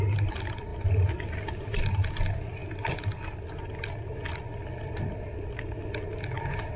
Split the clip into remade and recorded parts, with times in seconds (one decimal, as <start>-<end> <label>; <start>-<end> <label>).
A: 0.0-6.8 recorded